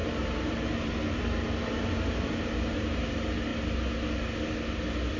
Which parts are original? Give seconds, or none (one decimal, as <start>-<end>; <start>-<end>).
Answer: 3.1-5.2